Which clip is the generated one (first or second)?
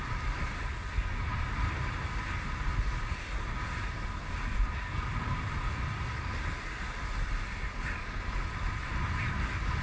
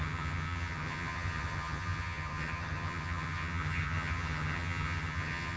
second